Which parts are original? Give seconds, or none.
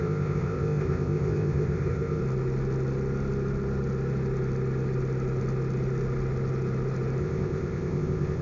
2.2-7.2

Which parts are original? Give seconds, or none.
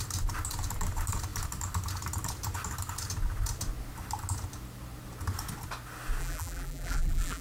0.0-6.2